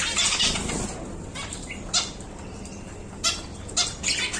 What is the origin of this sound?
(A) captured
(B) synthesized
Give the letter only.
A